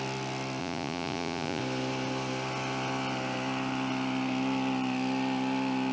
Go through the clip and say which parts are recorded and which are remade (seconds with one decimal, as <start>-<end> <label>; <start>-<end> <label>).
0.0-0.6 recorded; 0.6-1.6 remade; 1.6-5.9 recorded